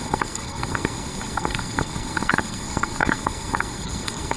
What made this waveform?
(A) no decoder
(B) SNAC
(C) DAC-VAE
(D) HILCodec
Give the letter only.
B